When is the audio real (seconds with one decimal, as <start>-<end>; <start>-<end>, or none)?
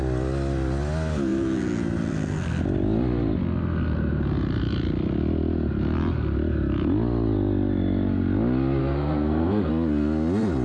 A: 0.0-8.8; 9.7-10.6